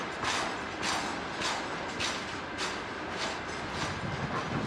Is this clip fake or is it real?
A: real